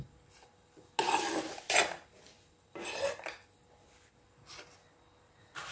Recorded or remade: recorded